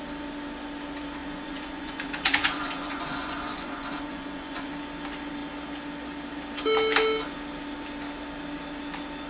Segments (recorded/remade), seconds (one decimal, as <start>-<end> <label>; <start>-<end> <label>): 0.0-1.2 recorded; 1.2-4.7 remade; 4.7-9.3 recorded